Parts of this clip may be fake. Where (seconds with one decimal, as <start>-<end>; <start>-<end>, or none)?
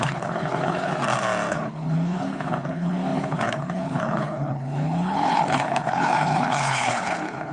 0.0-0.9; 1.5-7.5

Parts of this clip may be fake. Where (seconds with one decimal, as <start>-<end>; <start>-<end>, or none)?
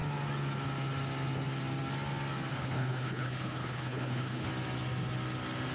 2.5-4.5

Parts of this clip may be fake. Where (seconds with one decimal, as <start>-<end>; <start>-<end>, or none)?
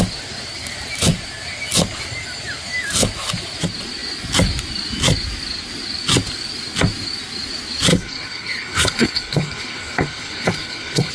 7.9-11.1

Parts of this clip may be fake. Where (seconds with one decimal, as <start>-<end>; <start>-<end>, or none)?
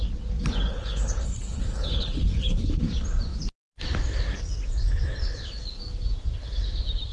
0.7-2.8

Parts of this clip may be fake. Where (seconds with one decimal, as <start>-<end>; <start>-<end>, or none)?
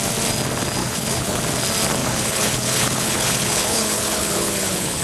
0.8-1.4; 2.0-5.0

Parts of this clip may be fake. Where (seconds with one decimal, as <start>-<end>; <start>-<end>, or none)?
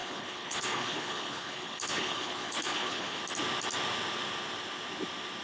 0.0-3.2